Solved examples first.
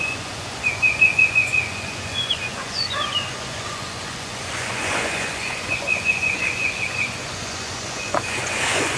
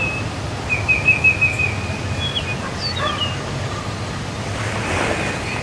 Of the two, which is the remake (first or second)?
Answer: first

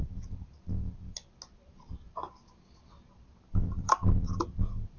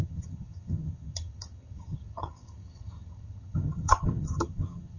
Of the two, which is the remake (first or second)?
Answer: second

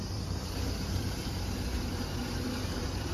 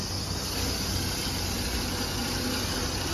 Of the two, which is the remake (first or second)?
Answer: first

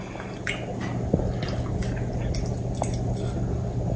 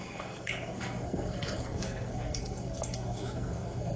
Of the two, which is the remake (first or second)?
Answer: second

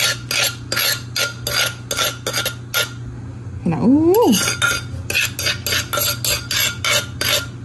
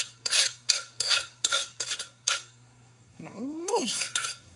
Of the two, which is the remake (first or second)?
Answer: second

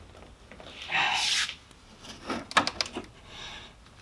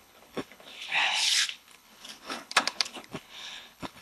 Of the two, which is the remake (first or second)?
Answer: second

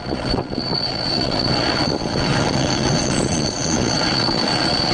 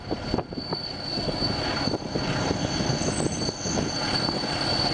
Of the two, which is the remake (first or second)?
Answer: first